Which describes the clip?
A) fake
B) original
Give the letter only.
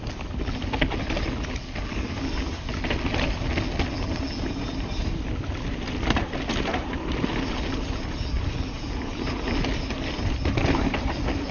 B